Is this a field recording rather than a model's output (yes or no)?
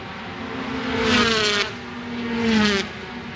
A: yes